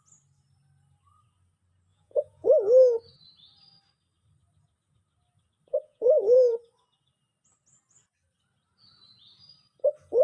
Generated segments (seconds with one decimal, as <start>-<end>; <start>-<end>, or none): 1.9-2.5; 5.7-6.6